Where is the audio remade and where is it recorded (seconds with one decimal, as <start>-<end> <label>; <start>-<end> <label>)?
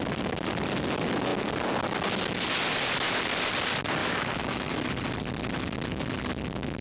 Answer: 0.0-4.0 recorded; 4.0-4.7 remade; 4.7-6.8 recorded